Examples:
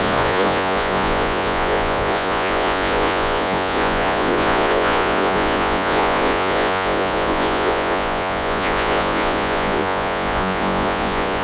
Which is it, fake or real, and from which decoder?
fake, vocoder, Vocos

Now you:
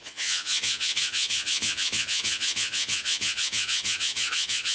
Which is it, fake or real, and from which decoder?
fake, vocoder, Vocos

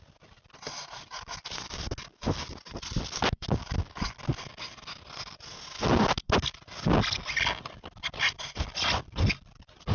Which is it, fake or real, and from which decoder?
real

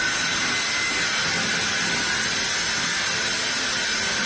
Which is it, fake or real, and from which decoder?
real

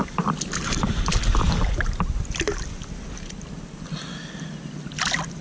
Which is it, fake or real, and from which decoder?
real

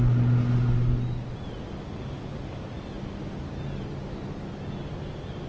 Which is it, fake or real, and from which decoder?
real